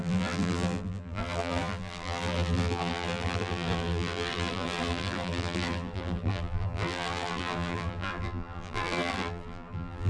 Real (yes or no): no